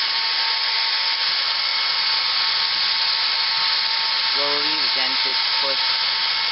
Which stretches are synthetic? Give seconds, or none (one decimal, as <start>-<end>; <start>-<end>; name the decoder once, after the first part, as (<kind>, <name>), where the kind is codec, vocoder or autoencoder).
none